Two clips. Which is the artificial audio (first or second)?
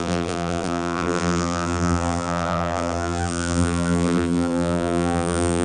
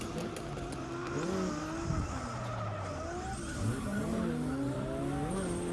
first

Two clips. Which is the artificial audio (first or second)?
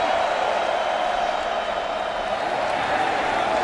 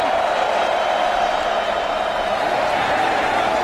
first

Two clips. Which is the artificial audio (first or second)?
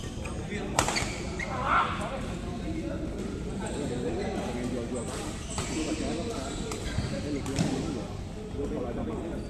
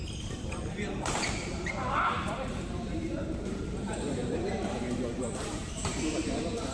second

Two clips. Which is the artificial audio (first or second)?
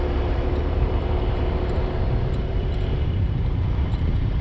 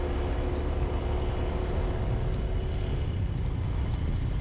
first